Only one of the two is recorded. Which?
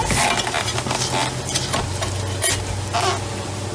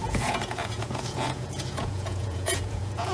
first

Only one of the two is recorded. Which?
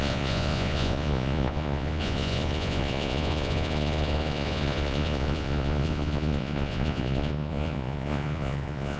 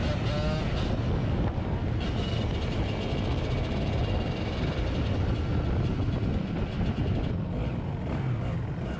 second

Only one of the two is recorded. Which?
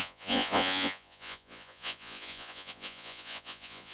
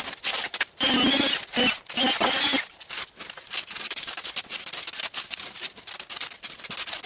second